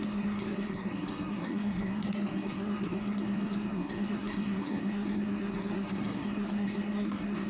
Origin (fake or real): fake